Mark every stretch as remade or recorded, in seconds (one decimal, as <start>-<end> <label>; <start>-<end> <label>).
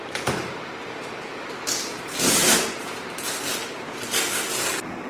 0.0-3.1 remade; 3.1-5.1 recorded